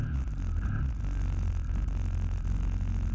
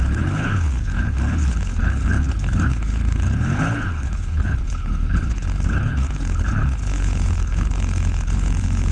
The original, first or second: first